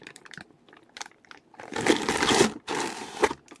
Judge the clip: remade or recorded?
recorded